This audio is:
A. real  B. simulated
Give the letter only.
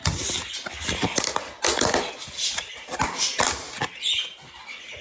A